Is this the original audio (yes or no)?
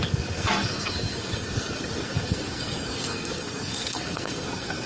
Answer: no